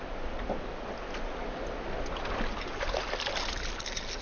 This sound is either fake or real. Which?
real